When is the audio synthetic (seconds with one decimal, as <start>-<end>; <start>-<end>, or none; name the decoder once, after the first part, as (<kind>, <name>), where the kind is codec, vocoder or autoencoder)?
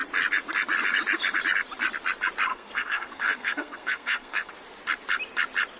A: 2.5-4.5 (codec, SNAC)